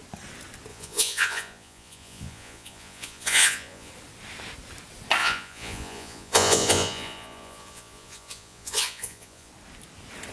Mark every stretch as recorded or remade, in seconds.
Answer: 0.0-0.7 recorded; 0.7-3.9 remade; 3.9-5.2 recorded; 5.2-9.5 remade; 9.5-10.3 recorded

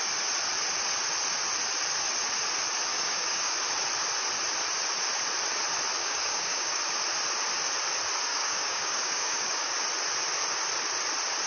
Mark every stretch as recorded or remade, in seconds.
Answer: 0.0-2.9 recorded; 2.9-3.5 remade; 3.5-6.0 recorded; 6.0-6.8 remade; 6.8-8.3 recorded; 8.3-9.7 remade; 9.7-11.5 recorded

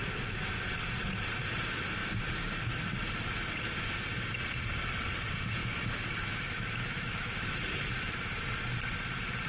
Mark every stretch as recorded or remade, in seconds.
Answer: 0.0-5.6 recorded; 5.6-7.6 remade; 7.6-9.5 recorded

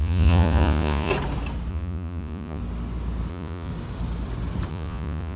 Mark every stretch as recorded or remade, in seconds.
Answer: 0.0-1.1 remade; 1.1-1.7 recorded; 1.7-2.6 remade; 2.6-3.3 recorded; 3.3-3.7 remade; 3.7-4.7 recorded; 4.7-5.4 remade

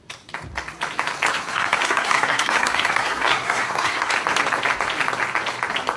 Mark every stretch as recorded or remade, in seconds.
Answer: 0.0-1.3 recorded; 1.3-4.1 remade; 4.1-6.0 recorded

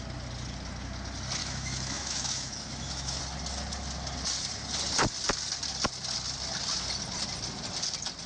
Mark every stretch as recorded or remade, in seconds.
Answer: 0.0-1.4 recorded; 1.4-3.2 remade; 3.2-8.3 recorded